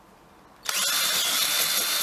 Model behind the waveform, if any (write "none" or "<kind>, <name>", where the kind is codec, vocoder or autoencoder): none